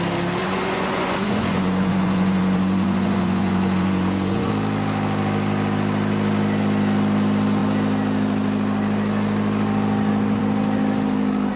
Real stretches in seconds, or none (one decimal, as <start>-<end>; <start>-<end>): 0.0-0.4; 4.5-11.6